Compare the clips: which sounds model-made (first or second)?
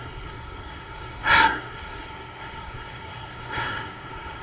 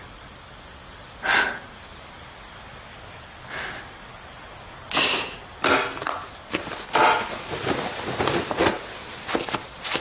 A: first